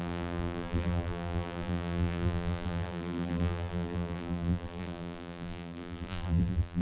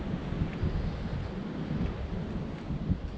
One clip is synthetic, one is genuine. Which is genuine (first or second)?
second